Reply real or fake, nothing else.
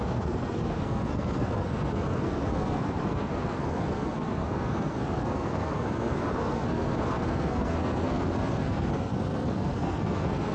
fake